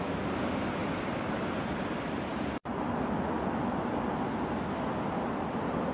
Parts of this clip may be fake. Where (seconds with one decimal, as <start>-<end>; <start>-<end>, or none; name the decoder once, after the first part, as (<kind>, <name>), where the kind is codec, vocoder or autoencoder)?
none